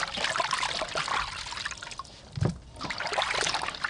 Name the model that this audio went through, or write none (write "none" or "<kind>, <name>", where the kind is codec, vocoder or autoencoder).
none